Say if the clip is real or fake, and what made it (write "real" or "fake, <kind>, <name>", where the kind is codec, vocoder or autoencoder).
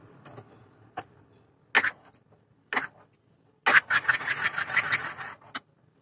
real